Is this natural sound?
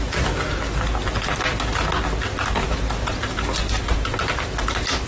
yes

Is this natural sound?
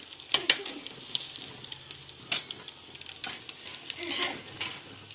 yes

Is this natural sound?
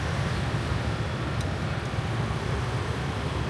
yes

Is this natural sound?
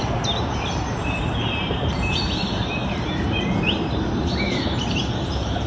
no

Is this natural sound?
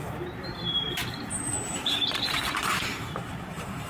no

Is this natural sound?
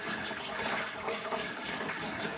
no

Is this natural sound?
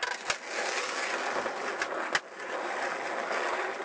yes